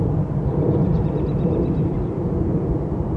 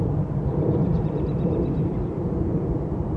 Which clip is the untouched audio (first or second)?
first